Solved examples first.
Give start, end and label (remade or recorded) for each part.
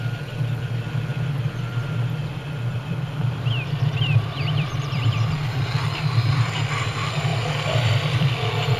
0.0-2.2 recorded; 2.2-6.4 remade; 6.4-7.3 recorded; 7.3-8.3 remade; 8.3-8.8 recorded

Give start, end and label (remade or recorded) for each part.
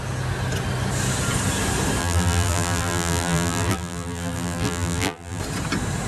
0.0-2.0 recorded; 2.0-5.4 remade; 5.4-6.1 recorded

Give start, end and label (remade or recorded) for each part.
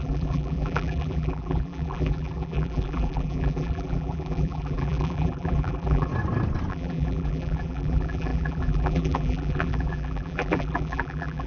0.0-6.1 remade; 6.1-6.7 recorded; 6.7-11.5 remade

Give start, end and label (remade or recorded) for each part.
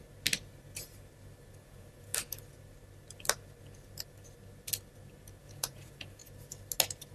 0.0-1.6 recorded; 1.6-2.1 remade; 2.1-5.4 recorded; 5.4-6.2 remade; 6.2-7.1 recorded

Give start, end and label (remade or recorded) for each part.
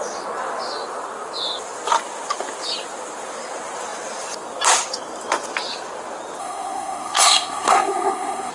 0.0-6.4 recorded; 6.4-8.5 remade